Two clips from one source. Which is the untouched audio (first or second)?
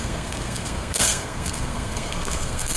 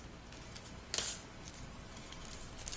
second